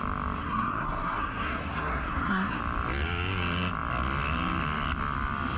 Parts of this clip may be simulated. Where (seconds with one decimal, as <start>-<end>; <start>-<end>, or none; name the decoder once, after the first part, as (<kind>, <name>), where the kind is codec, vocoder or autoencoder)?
0.4-2.6 (codec, SNAC)

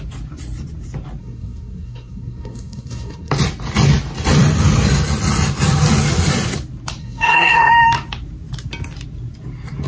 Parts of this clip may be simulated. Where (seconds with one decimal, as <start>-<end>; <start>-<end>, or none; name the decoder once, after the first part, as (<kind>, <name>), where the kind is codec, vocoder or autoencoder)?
1.2-3.3 (codec, SNAC); 7.0-7.7